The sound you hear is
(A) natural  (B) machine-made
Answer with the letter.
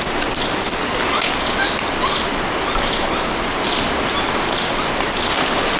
A